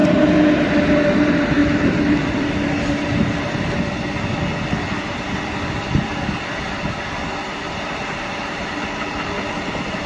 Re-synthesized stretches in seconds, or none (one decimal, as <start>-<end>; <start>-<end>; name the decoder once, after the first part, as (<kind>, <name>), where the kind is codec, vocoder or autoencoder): 1.6-2.5 (vocoder, BigVGAN v2)